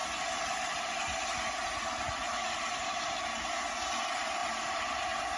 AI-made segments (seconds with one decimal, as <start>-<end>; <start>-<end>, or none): 4.4-5.4